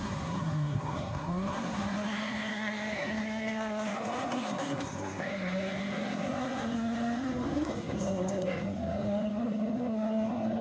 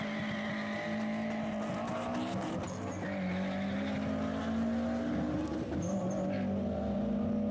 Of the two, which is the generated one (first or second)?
first